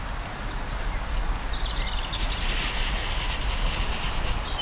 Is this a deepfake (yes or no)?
no